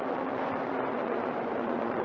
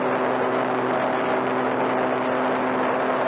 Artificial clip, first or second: first